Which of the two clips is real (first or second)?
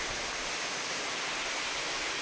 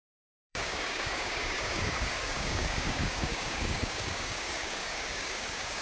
first